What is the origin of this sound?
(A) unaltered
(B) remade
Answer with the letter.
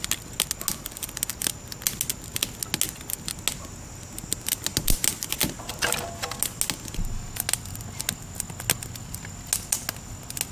A